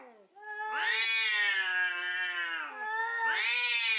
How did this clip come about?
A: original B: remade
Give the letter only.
A